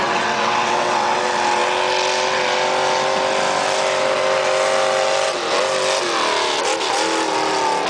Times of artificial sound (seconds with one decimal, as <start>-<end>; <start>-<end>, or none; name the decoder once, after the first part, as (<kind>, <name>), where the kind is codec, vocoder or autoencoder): 0.0-1.2 (vocoder, WaveNeXt)